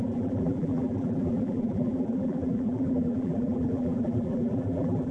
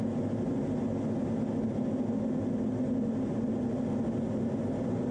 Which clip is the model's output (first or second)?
first